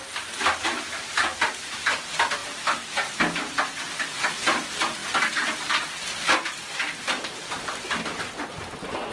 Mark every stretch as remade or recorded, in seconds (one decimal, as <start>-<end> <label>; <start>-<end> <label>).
0.0-9.1 recorded